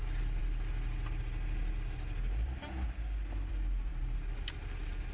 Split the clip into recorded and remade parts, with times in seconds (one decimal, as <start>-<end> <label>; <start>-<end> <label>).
0.0-5.1 recorded